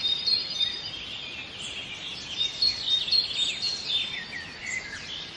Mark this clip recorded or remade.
recorded